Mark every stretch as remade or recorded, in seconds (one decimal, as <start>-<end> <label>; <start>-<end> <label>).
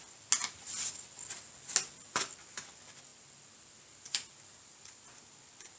0.0-3.1 recorded; 3.1-5.2 remade; 5.2-5.8 recorded